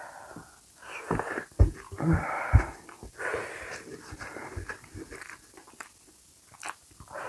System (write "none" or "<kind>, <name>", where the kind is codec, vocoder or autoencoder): none